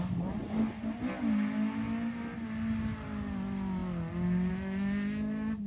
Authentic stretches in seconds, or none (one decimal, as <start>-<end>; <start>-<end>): 0.0-5.7